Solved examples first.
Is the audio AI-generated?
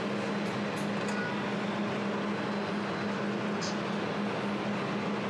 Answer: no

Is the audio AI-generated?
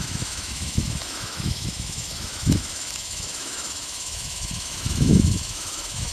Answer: yes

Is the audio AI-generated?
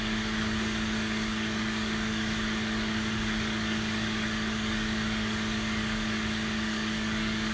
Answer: yes